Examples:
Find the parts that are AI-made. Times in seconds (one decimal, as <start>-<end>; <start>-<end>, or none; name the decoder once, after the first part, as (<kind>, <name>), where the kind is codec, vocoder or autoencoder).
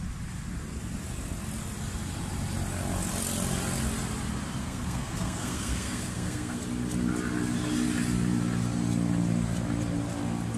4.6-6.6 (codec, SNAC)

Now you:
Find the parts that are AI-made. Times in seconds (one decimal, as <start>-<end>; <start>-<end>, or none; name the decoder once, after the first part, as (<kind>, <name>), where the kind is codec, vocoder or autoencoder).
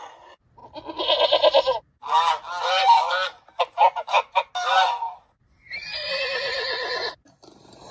none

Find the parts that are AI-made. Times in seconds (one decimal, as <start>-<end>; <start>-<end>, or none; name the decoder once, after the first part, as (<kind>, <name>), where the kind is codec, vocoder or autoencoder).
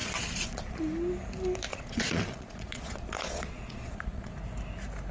0.0-0.8 (vocoder, Vocos); 1.7-4.3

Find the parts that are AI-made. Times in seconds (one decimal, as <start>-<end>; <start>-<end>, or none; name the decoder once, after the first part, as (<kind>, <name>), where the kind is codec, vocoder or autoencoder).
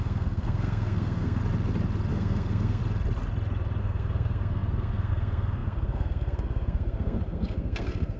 0.0-1.4 (codec, SNAC); 2.1-2.8; 3.8-8.2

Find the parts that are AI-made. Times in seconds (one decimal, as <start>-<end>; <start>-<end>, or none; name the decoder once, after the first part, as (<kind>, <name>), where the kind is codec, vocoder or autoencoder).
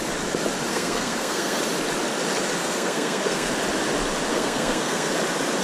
0.7-1.6 (codec, SNAC); 2.6-3.5; 4.3-5.1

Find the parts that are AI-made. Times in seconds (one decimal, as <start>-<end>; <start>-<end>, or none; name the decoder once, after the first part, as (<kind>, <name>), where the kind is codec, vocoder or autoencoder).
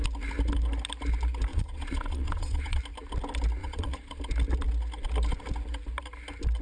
1.5-2.8 (vocoder, Vocos); 3.6-4.2